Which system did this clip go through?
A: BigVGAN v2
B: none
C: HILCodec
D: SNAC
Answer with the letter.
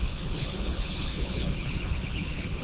C